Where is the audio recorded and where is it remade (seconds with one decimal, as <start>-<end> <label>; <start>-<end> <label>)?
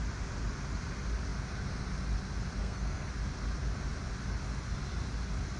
0.0-2.6 recorded; 2.6-3.1 remade; 3.1-5.6 recorded